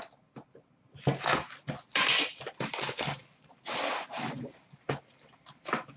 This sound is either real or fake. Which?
real